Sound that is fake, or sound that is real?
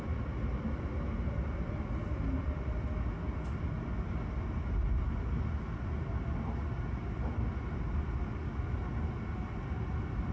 real